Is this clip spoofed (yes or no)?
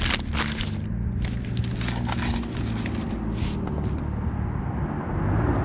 no